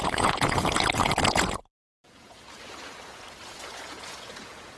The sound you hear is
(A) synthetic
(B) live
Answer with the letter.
A